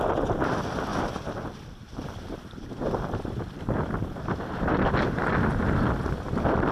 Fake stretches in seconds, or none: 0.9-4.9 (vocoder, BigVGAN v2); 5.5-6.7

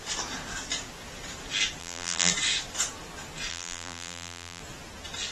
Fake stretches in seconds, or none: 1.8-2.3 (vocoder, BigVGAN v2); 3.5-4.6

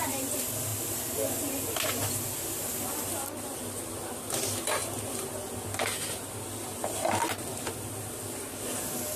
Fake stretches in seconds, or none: none

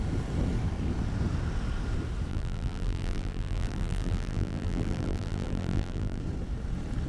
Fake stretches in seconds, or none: 2.3-6.2 (vocoder, BigVGAN v2)

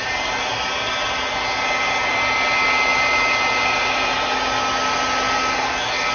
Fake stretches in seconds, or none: none

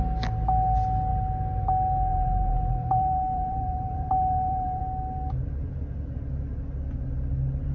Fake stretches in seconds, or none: 2.1-4.8 (vocoder, BigVGAN v2)

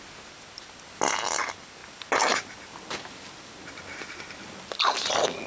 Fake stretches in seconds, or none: none

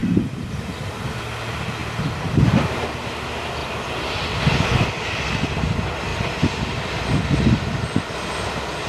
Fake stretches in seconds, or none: 0.0-0.6 (vocoder, BigVGAN v2); 3.6-4.4; 6.1-6.9